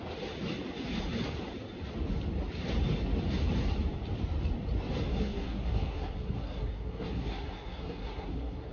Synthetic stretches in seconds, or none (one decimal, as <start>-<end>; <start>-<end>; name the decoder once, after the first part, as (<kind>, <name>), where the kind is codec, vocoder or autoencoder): 5.1-8.7 (codec, SNAC)